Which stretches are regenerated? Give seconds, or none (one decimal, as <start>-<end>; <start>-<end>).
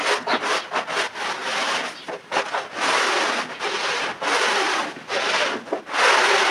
1.4-4.8